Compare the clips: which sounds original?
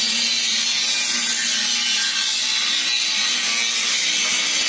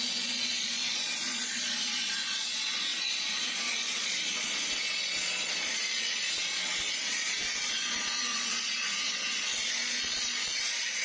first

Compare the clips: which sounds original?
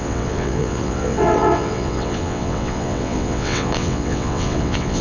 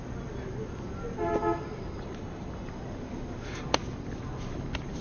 second